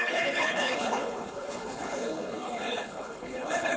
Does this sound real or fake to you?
fake